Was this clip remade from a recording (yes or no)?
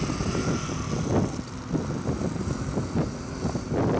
no